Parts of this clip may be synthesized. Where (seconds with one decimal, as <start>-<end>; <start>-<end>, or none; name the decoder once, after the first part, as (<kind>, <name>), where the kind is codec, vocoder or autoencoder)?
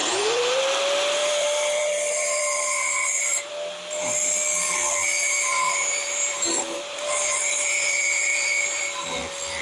0.0-0.6 (vocoder, BigVGAN v2); 1.2-3.5; 5.5-8.8